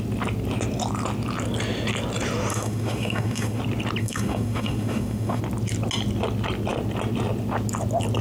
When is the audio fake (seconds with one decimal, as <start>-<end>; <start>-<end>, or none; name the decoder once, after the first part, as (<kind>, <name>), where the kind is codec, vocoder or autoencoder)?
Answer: 2.5-3.6 (autoencoder, DAC-VAE); 4.0-5.4